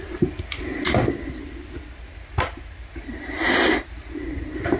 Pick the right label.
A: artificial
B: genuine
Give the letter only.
B